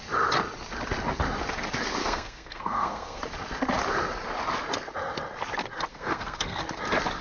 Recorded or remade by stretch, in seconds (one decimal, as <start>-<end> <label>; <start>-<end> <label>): 0.0-2.0 recorded; 2.0-3.2 remade; 3.2-5.9 recorded; 5.9-6.6 remade; 6.6-7.2 recorded